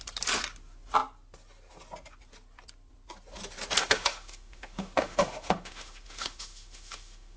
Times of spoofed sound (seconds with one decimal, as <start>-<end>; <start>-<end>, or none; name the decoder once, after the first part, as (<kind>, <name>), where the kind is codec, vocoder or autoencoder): 3.8-7.4 (autoencoder, DAC-VAE)